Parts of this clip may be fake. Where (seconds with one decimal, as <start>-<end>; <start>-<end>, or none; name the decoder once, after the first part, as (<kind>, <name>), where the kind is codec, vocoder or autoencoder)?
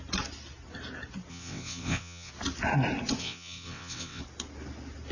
1.3-2.3 (vocoder, WaveNeXt); 3.2-4.2